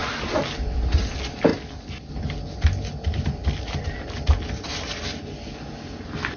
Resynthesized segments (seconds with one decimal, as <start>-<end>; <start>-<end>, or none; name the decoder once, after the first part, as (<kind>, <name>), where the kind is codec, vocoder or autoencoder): none